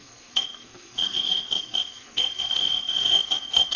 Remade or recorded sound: remade